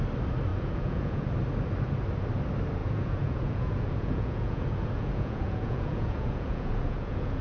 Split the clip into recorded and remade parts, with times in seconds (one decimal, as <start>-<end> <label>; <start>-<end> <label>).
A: 0.0-0.5 recorded; 0.5-1.3 remade; 1.3-2.8 recorded; 2.8-7.4 remade